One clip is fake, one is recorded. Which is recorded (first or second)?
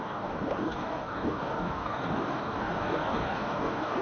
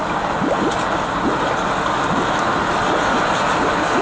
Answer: second